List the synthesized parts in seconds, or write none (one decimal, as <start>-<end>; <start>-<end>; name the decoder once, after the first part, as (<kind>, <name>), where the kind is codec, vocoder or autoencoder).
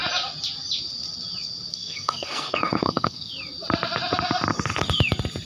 1.7-3.3 (codec, SNAC)